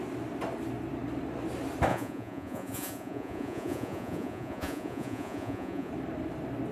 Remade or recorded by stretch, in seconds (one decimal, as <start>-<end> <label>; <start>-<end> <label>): 0.0-1.9 recorded; 1.9-5.9 remade; 5.9-6.7 recorded